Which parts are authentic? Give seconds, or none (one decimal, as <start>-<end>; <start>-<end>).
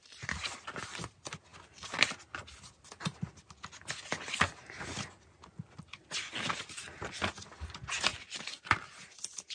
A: 0.0-9.5